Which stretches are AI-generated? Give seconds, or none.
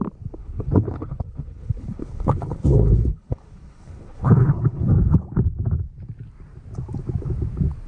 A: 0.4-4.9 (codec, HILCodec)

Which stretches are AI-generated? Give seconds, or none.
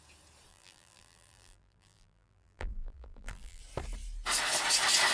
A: 0.5-3.6 (vocoder, BigVGAN v2)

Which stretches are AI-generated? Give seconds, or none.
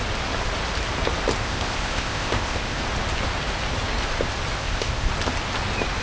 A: 1.4-2.8 (codec, ZipCodec); 4.6-5.1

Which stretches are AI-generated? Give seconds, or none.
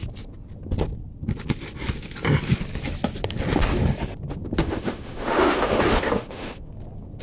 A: 4.6-6.7 (autoencoder, DAC-VAE)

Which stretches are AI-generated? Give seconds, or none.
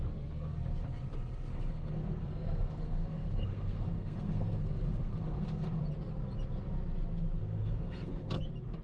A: 1.5-5.8 (codec, SNAC); 7.4-8.4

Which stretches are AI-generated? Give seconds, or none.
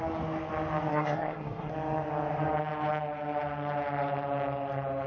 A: 0.9-1.7 (codec, SNAC)